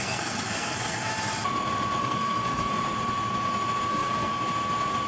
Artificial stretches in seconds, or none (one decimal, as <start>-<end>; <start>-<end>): 0.0-1.1; 2.0-2.7; 3.9-4.3